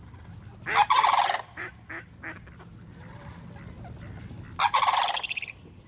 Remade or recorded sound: recorded